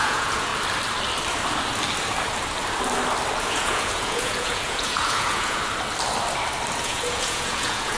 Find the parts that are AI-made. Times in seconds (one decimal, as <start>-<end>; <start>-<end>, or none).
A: 0.0-0.5; 3.4-5.6; 6.8-8.0